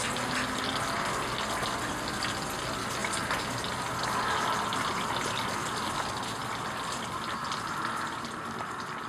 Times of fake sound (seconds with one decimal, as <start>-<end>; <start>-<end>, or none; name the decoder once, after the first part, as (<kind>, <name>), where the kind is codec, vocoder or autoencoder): none